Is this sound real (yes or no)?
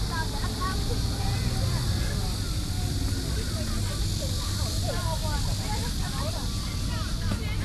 yes